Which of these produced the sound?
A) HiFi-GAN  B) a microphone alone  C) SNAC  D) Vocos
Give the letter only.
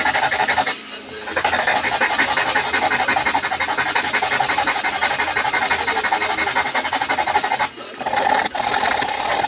B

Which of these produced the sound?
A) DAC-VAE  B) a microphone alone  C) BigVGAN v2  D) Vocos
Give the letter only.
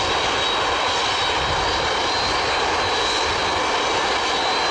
B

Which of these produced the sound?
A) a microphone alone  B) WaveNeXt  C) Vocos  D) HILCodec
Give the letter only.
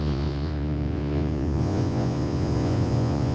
C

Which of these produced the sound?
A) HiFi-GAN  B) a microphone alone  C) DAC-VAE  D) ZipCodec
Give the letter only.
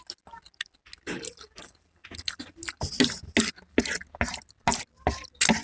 B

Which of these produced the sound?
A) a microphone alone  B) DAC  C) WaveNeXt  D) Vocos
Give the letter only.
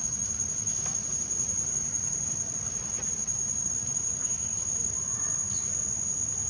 A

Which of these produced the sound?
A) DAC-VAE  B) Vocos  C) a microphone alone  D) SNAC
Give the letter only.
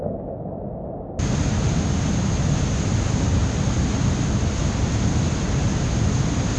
C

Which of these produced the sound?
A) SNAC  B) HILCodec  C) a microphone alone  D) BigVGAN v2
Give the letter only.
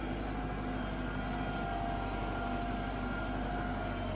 C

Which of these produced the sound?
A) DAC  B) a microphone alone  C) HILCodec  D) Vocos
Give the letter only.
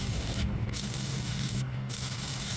A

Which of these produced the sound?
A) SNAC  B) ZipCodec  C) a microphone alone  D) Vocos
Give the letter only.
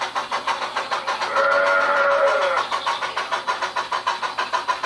C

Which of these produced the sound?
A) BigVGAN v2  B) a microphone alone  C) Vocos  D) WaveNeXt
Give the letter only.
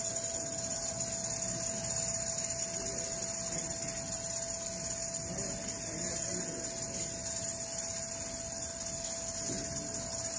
B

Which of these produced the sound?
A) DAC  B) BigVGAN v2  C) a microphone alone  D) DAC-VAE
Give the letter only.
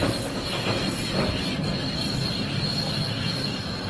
C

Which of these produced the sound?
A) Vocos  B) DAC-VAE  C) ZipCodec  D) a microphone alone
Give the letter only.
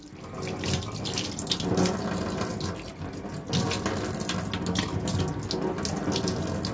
D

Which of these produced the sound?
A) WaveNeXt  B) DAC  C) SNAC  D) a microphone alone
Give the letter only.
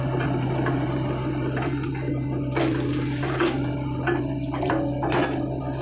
D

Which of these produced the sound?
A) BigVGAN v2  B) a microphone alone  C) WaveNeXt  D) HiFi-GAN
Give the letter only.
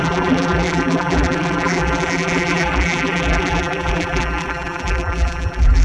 A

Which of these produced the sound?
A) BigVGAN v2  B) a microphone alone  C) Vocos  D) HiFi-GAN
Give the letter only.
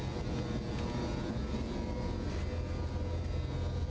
B